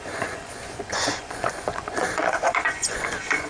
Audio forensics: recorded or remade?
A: remade